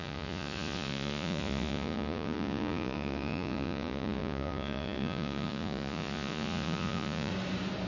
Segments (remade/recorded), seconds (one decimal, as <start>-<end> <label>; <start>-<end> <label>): 0.0-7.3 remade; 7.3-7.9 recorded